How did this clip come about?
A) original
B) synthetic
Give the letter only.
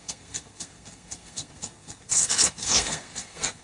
B